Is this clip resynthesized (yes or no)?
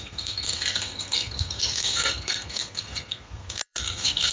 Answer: yes